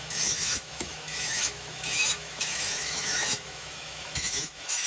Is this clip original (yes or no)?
no